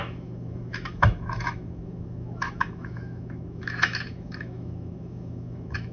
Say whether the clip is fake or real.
fake